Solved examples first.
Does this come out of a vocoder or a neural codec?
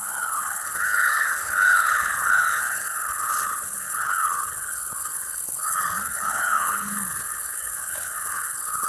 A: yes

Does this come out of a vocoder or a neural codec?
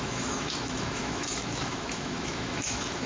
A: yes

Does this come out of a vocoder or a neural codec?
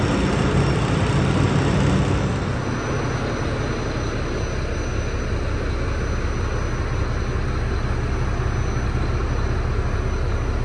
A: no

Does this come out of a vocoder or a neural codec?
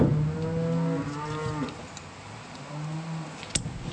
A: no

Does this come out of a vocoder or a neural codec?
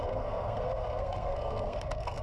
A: yes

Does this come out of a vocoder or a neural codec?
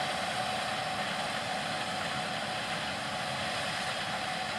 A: no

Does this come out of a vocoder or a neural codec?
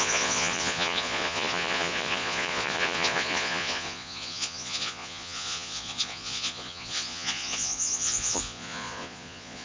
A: yes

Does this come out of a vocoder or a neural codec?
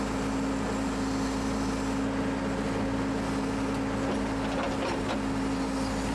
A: no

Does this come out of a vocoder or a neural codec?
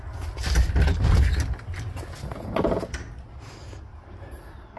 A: no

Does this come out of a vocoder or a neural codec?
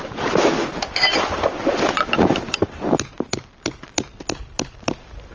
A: no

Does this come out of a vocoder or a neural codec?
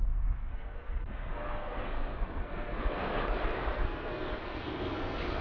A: yes